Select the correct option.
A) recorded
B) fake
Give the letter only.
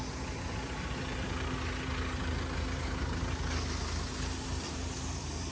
A